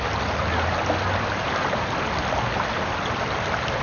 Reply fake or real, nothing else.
real